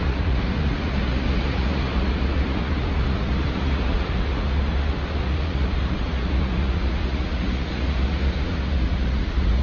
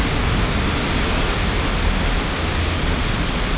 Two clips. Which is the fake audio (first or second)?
first